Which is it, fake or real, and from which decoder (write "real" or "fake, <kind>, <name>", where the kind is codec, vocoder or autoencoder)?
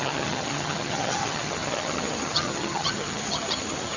fake, vocoder, HiFi-GAN